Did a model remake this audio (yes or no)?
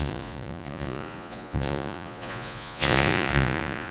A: yes